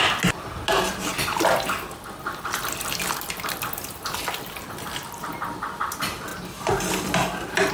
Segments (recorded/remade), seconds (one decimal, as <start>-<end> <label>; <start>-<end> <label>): 0.0-7.7 recorded